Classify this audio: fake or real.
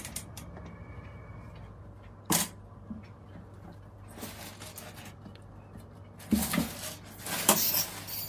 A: real